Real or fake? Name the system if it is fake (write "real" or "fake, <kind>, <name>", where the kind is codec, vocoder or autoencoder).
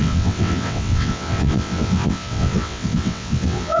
fake, vocoder, WaveNeXt